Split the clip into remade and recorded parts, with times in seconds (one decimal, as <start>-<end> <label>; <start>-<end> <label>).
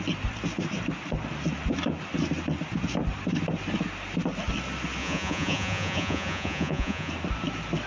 0.0-5.0 recorded; 5.0-7.1 remade; 7.1-7.9 recorded